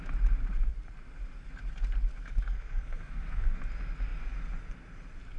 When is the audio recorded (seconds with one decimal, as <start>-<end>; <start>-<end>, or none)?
0.0-2.1; 3.6-5.4